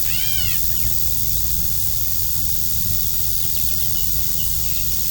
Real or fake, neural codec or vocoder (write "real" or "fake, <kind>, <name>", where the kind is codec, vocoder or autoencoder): real